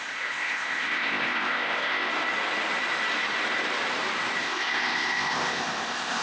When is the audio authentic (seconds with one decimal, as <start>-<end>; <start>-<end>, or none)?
2.1-4.4